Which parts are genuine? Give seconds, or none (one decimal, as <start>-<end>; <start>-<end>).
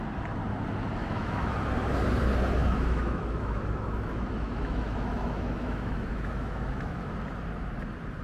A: 0.0-1.0; 1.5-2.6; 7.1-8.2